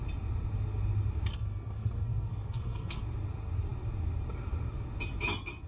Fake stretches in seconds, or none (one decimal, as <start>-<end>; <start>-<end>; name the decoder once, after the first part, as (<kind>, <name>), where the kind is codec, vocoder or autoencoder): 1.3-3.0 (codec, SNAC)